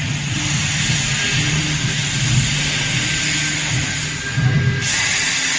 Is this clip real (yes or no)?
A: yes